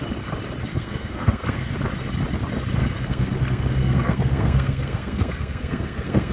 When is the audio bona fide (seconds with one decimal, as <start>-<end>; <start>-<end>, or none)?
0.0-0.7; 1.7-2.8

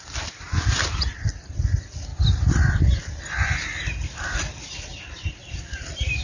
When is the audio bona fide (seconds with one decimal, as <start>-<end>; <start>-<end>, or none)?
0.0-6.2

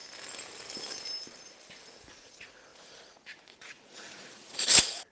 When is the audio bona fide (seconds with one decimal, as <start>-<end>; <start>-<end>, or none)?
0.0-1.8